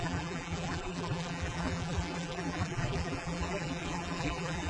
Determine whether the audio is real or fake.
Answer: fake